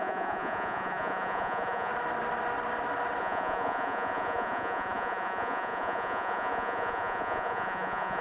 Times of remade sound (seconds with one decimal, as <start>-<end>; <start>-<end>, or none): 0.0-1.9; 3.2-8.2

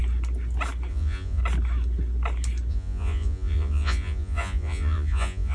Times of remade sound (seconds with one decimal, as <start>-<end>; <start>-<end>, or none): 0.9-1.4; 2.7-5.5